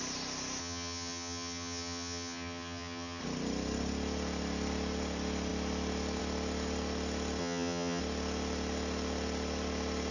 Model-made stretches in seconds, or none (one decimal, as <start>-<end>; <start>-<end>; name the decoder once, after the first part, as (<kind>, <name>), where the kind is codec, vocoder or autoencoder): 0.6-3.2 (vocoder, HiFi-GAN); 7.4-8.0